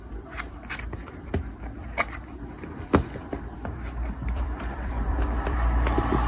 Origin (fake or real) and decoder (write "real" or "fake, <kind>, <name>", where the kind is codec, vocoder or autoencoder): fake, vocoder, BigVGAN v2